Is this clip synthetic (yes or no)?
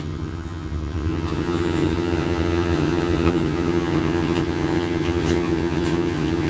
yes